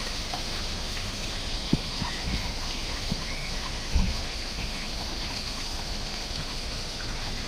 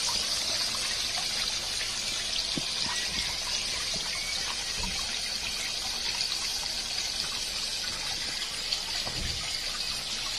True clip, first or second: second